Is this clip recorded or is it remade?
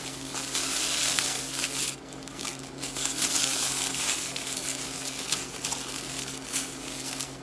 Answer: remade